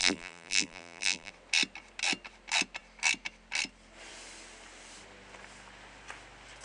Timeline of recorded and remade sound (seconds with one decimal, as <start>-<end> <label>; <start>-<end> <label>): 0.0-1.3 remade; 1.3-6.6 recorded